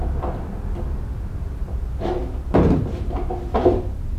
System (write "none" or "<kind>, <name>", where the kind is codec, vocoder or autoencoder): none